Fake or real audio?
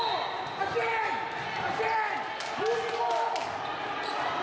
real